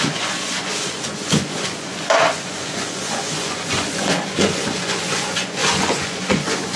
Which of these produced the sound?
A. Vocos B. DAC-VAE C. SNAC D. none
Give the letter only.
A